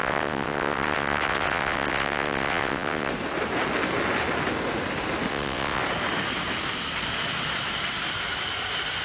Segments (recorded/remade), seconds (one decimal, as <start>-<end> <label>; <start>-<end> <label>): 0.0-3.1 remade; 3.1-5.3 recorded; 5.3-5.8 remade; 5.8-9.0 recorded